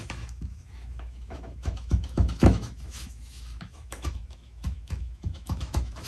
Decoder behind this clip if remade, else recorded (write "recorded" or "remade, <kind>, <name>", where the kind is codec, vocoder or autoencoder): remade, autoencoder, DAC-VAE